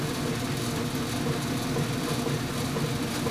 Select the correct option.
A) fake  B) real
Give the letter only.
B